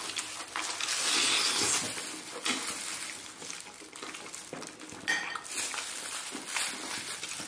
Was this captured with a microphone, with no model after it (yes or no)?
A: yes